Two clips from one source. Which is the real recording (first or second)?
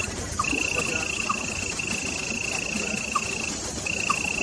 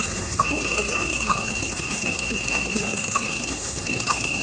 first